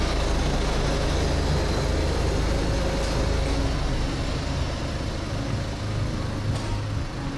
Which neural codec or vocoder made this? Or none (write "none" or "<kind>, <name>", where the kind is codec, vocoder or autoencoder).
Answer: none